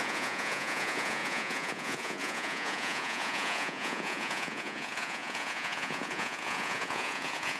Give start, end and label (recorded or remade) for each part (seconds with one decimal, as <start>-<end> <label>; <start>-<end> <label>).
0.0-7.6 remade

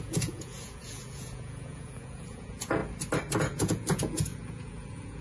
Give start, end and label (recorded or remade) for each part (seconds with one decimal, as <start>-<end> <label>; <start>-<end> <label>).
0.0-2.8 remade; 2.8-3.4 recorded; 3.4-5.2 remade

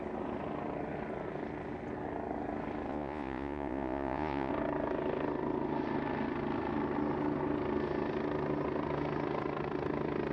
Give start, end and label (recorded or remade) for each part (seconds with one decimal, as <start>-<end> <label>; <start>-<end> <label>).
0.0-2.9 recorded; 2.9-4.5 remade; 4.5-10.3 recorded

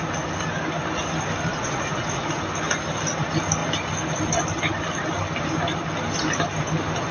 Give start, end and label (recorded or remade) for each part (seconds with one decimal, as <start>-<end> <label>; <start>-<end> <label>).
0.0-1.5 recorded; 1.5-2.4 remade; 2.4-7.1 recorded